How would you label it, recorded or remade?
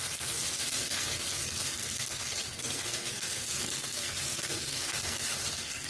remade